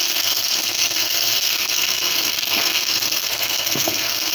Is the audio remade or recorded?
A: remade